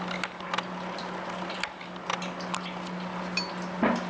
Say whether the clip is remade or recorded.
recorded